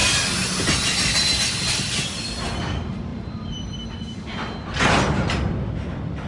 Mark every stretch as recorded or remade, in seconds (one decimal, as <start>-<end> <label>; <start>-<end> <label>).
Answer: 0.0-1.5 recorded; 1.5-6.3 remade